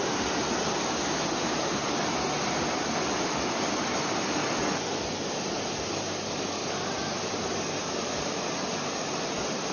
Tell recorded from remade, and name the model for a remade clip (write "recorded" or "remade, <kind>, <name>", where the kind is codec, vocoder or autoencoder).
recorded